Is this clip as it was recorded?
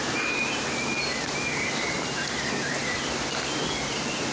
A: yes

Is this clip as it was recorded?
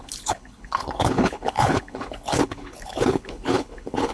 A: no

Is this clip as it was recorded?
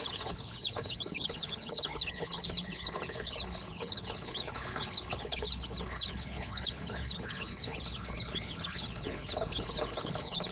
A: no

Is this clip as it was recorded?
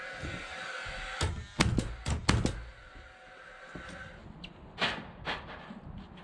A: yes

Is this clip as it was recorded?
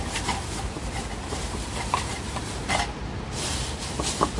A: yes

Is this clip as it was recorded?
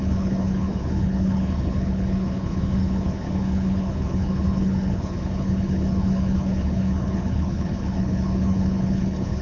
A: no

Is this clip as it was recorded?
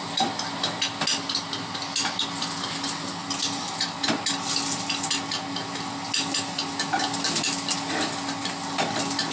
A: yes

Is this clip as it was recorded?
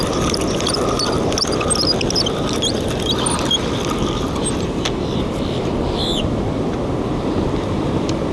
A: yes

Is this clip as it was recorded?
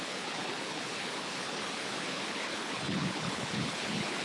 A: no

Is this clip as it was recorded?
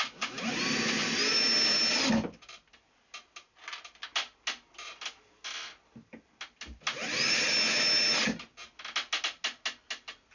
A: yes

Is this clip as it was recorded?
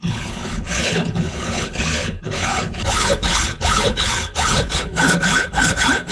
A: no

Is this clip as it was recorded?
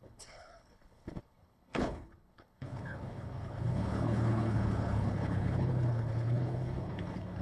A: no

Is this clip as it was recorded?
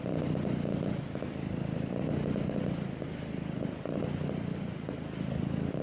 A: yes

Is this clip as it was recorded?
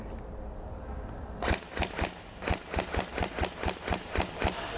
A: yes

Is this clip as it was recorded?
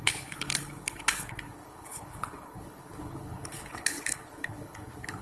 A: no